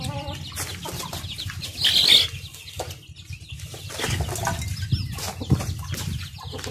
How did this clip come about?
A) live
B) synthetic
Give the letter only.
A